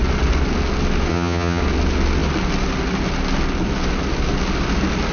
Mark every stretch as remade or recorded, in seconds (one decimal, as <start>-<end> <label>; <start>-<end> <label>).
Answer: 0.0-1.1 recorded; 1.1-1.6 remade; 1.6-5.1 recorded